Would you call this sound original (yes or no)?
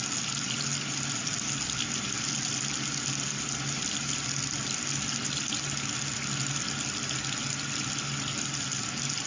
yes